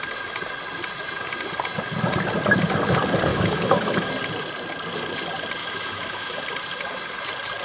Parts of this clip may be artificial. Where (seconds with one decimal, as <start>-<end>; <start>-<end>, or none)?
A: 3.3-4.1; 5.6-6.4